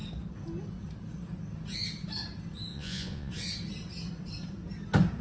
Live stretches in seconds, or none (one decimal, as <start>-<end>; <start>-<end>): 0.0-2.7; 3.3-5.2